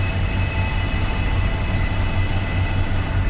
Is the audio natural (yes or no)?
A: yes